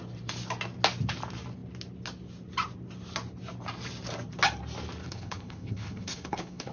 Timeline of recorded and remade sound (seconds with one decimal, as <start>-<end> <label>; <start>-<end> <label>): 0.0-5.0 recorded; 5.0-6.7 remade